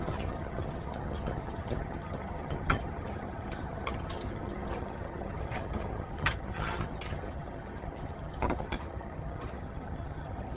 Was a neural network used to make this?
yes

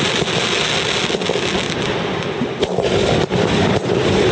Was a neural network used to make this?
no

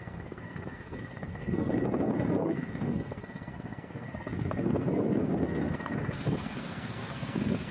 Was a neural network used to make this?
yes